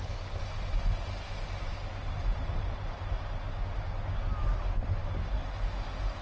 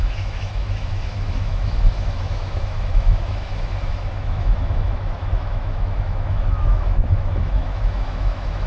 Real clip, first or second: first